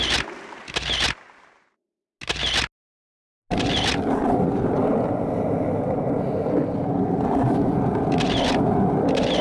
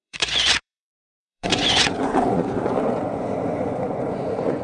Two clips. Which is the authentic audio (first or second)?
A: first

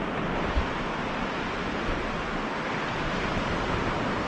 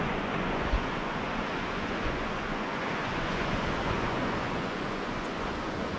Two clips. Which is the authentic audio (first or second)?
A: first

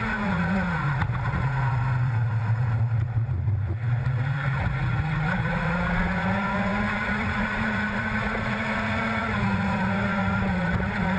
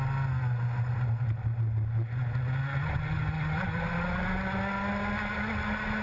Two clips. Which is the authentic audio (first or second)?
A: second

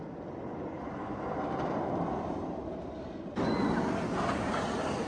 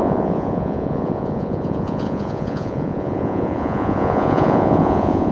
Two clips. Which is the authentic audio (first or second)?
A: first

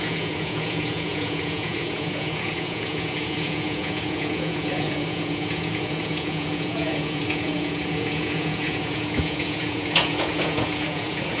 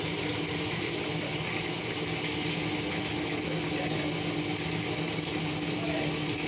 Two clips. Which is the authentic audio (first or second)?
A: second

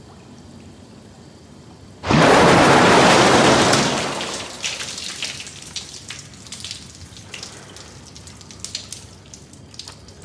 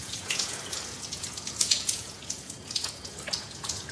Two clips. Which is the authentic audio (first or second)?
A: first